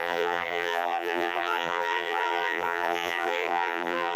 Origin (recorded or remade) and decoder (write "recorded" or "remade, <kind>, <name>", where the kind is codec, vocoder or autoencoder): remade, vocoder, BigVGAN v2